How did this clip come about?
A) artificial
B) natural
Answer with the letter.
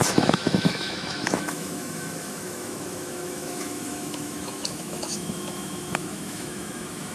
A